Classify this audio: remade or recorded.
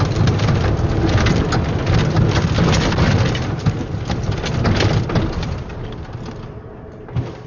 recorded